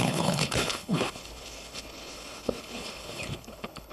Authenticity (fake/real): fake